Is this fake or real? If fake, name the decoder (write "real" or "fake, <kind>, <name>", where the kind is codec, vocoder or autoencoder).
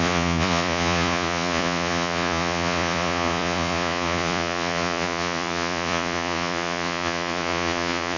fake, vocoder, Vocos